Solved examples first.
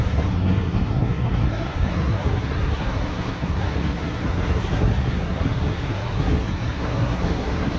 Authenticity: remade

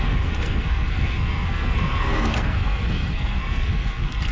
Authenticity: remade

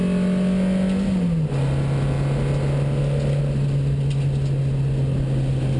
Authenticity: recorded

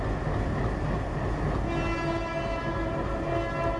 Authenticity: recorded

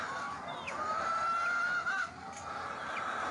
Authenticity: recorded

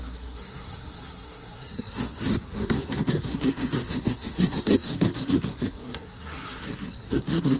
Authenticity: remade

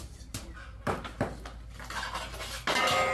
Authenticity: recorded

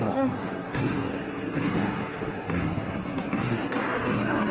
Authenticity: remade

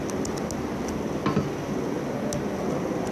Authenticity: recorded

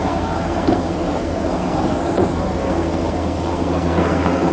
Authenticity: remade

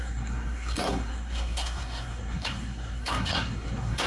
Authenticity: remade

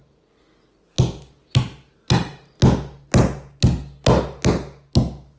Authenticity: recorded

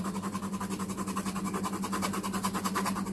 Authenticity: recorded